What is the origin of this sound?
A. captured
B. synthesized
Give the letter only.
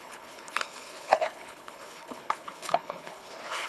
B